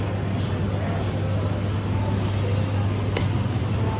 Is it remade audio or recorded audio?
recorded